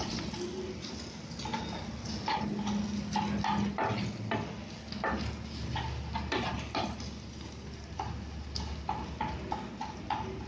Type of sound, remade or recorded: recorded